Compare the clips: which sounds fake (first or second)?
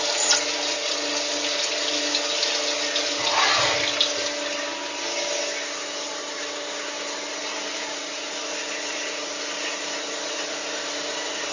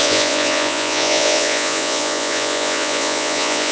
second